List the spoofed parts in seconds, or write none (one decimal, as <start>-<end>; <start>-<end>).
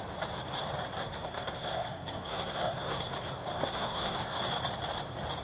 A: 1.0-3.1; 3.5-4.4